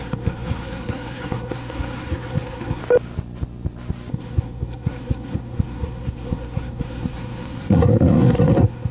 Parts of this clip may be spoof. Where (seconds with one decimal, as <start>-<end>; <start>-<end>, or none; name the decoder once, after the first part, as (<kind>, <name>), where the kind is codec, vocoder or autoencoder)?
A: 0.0-2.8 (codec, SNAC); 4.1-8.9